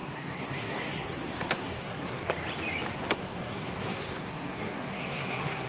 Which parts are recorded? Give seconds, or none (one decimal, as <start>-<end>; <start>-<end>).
2.3-2.9